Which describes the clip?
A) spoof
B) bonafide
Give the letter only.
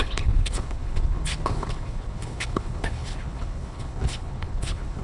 A